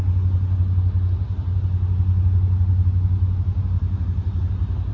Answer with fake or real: real